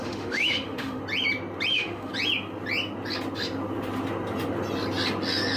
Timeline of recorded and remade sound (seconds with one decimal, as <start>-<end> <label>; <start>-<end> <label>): 0.0-1.0 remade; 1.0-1.7 recorded; 1.7-2.1 remade; 2.1-5.6 recorded